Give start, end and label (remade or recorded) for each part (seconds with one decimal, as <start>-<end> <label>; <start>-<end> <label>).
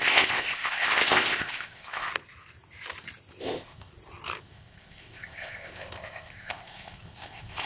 0.0-2.1 remade; 2.1-3.4 recorded; 3.4-3.9 remade; 3.9-4.4 recorded; 4.4-7.7 remade